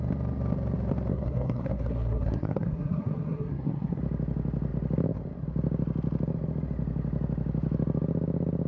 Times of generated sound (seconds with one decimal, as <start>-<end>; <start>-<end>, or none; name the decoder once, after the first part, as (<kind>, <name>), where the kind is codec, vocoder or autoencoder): 1.1-4.0 (codec, SNAC)